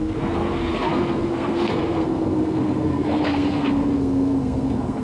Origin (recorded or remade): remade